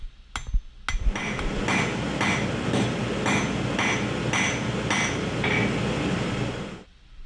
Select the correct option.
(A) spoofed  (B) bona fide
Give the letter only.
B